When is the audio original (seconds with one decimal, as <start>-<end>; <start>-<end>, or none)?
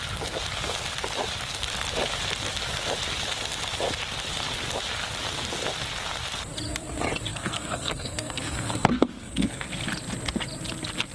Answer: 0.0-7.3; 9.7-11.1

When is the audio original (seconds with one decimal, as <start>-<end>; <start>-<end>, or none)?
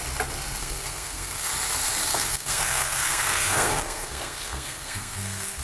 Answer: 0.0-0.6; 1.5-2.1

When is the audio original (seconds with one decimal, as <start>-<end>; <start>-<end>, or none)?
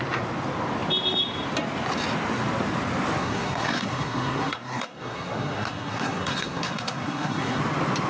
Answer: 0.0-3.2; 7.6-8.1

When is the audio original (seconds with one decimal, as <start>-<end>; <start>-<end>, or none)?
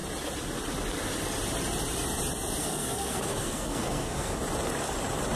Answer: 0.0-2.6; 4.3-5.4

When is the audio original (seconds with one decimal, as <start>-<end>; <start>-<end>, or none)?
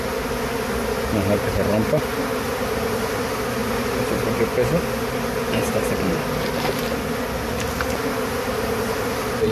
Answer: 0.0-9.5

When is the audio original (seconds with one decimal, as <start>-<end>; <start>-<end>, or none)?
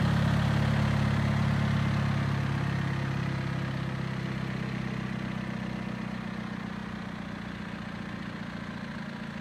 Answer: 0.0-9.4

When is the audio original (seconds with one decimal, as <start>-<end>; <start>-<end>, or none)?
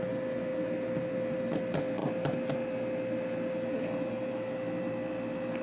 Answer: 0.0-5.6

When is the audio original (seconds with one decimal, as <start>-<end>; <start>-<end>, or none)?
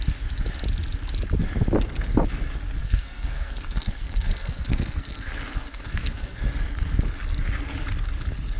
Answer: 0.0-2.8; 5.3-5.7; 6.4-8.6